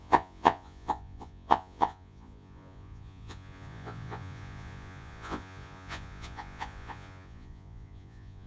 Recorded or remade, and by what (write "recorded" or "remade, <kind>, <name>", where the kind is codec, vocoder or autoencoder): remade, vocoder, Vocos